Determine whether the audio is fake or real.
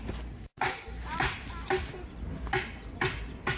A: real